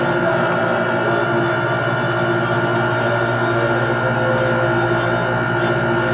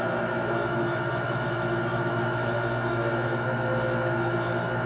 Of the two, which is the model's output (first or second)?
second